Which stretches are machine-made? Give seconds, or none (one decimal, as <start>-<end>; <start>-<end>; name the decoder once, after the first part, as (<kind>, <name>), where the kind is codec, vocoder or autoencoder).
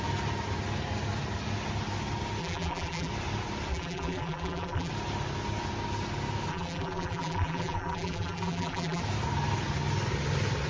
2.4-3.1 (vocoder, BigVGAN v2); 3.7-4.9; 6.5-9.0